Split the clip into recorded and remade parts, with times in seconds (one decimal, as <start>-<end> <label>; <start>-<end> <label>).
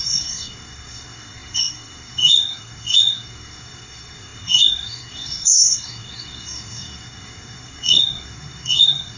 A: 0.0-9.2 remade